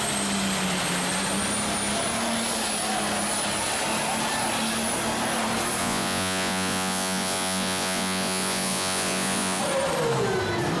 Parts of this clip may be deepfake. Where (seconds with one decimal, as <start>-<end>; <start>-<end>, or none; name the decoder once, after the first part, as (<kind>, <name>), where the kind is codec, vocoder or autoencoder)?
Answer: 5.8-9.6 (vocoder, Vocos)

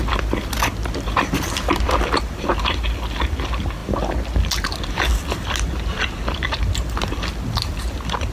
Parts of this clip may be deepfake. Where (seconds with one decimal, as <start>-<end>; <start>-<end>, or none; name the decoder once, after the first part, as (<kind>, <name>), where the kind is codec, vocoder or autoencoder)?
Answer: none

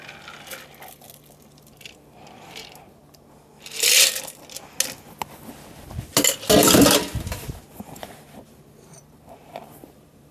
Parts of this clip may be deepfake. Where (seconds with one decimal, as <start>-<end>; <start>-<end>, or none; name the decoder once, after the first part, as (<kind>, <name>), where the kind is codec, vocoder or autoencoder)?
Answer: 6.6-10.3 (vocoder, BigVGAN v2)

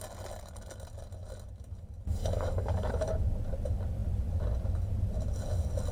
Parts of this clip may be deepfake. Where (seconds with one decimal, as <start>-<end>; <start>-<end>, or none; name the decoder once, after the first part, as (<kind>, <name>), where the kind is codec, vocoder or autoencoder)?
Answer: 2.2-2.9 (codec, DAC)

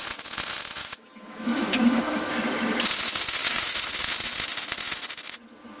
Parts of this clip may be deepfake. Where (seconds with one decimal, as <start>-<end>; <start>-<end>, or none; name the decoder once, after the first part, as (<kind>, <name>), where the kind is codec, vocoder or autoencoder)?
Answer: 0.8-2.3 (autoencoder, DAC-VAE); 3.4-4.1

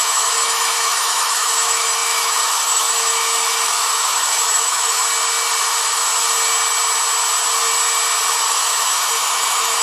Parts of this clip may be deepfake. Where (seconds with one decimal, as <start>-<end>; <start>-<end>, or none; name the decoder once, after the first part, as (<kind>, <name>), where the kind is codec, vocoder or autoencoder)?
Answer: 0.0-5.0 (autoencoder, DAC-VAE); 8.5-9.8

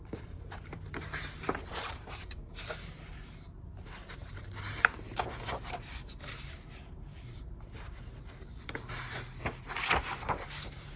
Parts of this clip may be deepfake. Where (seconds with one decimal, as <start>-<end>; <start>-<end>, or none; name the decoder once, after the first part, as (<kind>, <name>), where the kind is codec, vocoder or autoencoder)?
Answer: 0.0-9.4 (vocoder, BigVGAN v2); 10.5-11.0

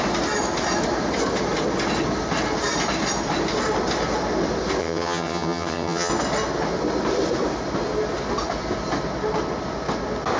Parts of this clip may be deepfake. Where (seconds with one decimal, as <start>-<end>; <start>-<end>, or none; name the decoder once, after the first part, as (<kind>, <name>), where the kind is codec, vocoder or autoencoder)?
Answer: 4.8-6.1 (vocoder, HiFi-GAN)